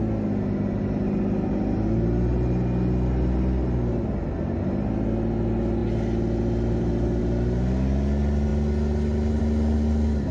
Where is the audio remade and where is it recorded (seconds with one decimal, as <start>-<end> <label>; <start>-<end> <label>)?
0.0-10.3 recorded